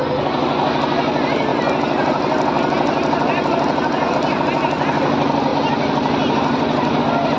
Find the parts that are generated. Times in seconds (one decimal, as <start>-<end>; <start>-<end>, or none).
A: 5.5-7.0